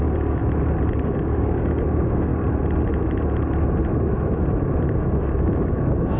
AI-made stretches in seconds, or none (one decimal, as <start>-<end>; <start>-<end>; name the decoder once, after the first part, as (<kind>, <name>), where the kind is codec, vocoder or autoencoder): 0.0-0.4 (codec, DAC); 0.9-2.3; 5.0-6.2